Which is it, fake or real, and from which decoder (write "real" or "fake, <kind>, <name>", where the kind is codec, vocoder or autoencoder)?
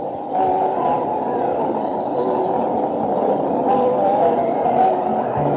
real